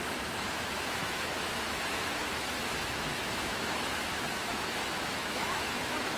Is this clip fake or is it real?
fake